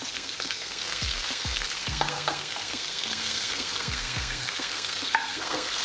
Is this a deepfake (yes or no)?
yes